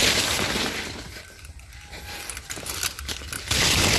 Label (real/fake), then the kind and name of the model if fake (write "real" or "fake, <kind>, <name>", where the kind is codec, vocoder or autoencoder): real